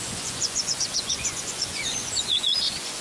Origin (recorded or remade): remade